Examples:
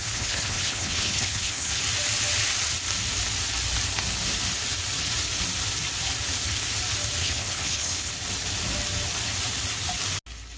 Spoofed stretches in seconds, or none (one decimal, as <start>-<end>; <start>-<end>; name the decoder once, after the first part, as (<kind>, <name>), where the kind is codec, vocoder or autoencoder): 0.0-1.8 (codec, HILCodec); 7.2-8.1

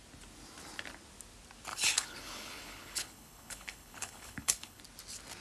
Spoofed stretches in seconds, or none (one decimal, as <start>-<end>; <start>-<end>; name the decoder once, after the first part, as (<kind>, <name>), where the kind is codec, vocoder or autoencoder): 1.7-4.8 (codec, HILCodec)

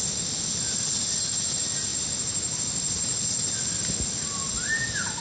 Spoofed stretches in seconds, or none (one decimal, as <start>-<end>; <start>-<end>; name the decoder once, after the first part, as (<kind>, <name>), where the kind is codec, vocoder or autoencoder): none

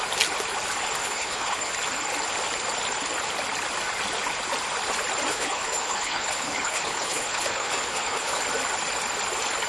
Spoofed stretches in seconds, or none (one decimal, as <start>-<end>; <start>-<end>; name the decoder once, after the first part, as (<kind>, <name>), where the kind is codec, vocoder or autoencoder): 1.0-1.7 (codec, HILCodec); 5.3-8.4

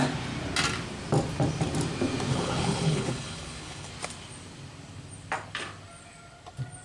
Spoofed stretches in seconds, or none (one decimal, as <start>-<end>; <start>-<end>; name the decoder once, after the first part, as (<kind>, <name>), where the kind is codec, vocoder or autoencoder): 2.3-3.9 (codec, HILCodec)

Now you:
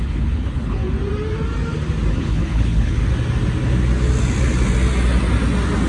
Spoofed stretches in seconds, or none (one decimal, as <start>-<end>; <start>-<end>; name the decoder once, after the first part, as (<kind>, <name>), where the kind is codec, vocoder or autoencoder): 0.0-0.8 (codec, HILCodec); 2.1-3.0

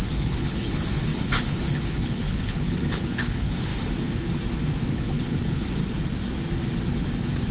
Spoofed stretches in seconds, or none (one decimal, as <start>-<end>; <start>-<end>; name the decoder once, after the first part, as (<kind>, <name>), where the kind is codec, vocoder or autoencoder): 0.0-3.7 (codec, HILCodec); 4.9-5.8

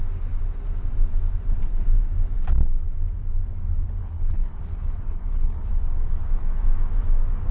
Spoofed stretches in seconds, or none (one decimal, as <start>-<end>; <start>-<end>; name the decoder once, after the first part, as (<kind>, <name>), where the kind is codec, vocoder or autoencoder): 4.0-5.7 (codec, HILCodec)